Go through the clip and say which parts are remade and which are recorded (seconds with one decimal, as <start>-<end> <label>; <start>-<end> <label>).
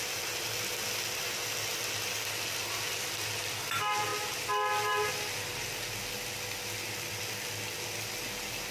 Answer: 0.0-8.7 recorded